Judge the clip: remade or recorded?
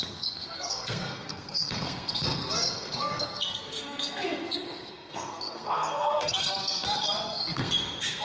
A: remade